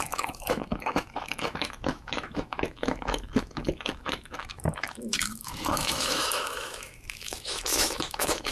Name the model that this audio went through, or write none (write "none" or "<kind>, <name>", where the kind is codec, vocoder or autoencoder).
autoencoder, DAC-VAE